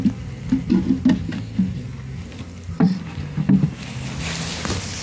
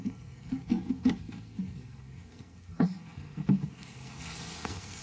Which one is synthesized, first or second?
second